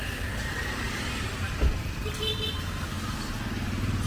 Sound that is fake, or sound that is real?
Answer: real